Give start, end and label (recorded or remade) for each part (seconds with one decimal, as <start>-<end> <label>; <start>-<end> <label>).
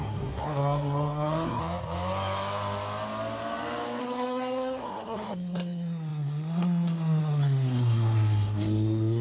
0.0-1.6 remade; 1.6-4.0 recorded; 4.0-9.2 remade